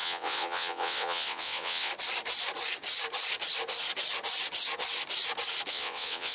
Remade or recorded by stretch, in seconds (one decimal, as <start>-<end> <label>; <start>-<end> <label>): 0.0-1.9 remade; 1.9-5.7 recorded; 5.7-6.3 remade